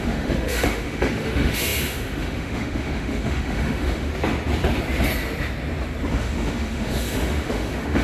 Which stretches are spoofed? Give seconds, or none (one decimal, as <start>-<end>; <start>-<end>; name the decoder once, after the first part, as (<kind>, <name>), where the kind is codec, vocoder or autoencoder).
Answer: 0.0-4.1 (autoencoder, DAC-VAE); 6.1-8.0